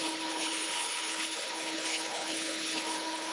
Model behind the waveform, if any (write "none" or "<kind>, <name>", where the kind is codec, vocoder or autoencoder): codec, HILCodec